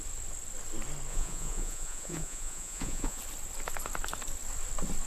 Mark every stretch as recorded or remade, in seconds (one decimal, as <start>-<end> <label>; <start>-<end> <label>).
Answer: 0.0-1.1 recorded; 1.1-3.2 remade; 3.2-5.1 recorded